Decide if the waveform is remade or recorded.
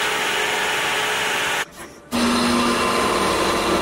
recorded